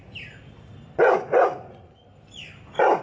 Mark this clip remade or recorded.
recorded